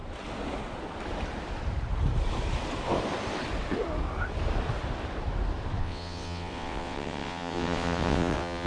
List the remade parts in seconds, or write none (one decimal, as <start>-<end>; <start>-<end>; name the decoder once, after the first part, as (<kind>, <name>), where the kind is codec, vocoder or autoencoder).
5.8-8.7 (vocoder, WaveNeXt)